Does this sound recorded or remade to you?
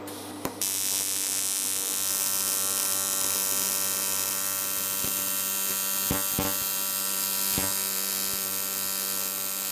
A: recorded